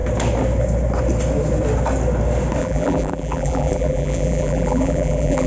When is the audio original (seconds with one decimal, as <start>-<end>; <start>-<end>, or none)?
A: 0.0-2.6

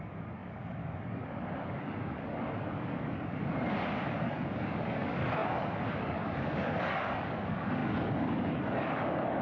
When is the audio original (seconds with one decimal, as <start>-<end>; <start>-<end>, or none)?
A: 3.4-4.1

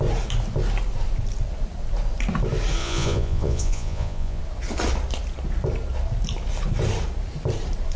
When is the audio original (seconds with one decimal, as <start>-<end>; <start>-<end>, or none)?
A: 0.0-2.8; 4.4-8.0